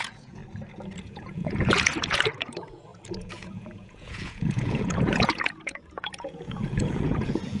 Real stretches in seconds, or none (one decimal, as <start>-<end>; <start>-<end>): 0.4-1.0